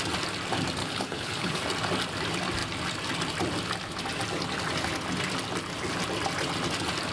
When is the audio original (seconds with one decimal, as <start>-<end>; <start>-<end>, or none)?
0.0-0.8; 1.6-7.1